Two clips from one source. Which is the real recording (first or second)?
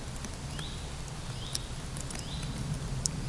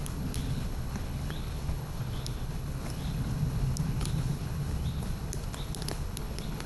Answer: first